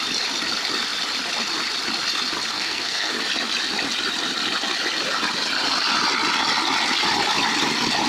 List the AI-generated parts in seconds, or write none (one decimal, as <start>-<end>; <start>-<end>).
2.5-3.2